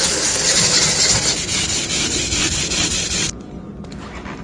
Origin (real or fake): real